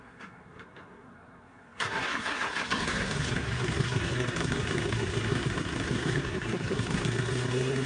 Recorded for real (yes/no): no